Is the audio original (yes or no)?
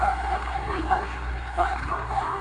no